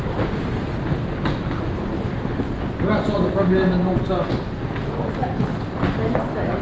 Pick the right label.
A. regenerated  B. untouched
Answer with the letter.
B